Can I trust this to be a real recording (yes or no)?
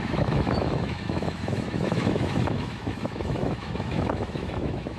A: no